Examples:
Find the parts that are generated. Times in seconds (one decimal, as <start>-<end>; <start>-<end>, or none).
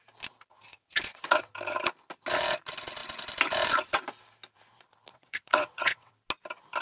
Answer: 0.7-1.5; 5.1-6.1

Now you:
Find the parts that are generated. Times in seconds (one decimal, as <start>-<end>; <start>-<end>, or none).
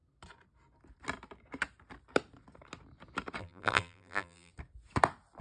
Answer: 3.4-4.5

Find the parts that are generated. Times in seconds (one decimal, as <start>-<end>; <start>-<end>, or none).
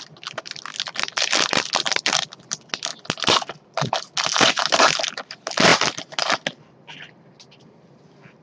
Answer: none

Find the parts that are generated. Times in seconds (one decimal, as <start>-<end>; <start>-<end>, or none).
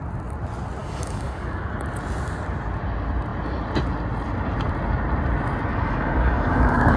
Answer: 0.8-1.7; 5.7-7.0